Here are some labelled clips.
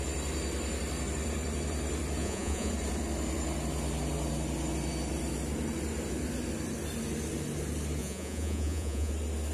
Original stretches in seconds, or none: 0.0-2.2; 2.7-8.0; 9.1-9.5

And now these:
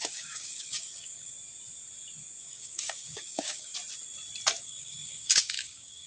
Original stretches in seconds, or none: 1.3-2.4; 3.7-4.6